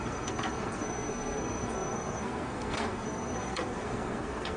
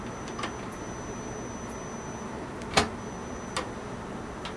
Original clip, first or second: second